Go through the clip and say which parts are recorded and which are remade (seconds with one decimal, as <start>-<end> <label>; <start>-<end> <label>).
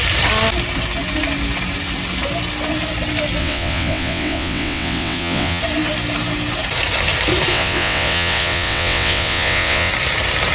0.0-3.4 recorded; 3.4-5.6 remade; 5.6-7.5 recorded; 7.5-9.9 remade; 9.9-10.5 recorded